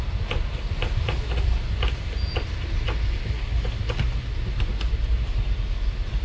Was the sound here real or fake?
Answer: real